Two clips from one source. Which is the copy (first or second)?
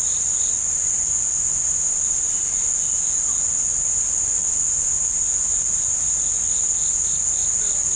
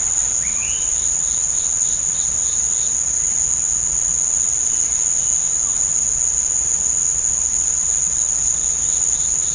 second